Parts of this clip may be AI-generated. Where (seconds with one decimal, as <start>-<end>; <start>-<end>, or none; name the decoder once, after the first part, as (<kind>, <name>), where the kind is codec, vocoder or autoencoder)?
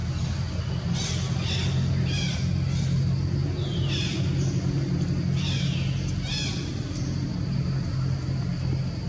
none